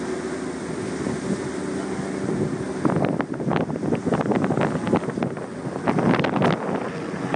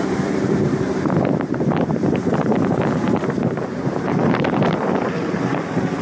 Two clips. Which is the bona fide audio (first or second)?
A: first